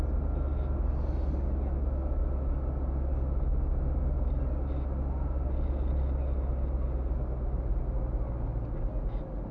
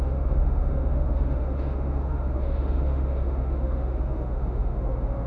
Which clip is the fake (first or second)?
second